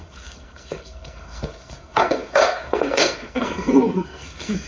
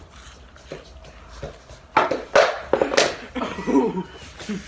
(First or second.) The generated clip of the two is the first